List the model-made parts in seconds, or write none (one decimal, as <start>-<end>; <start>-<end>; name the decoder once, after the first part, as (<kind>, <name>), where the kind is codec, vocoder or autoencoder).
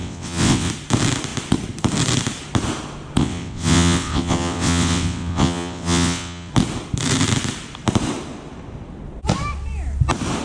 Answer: 0.0-0.7 (vocoder, WaveNeXt); 3.2-6.5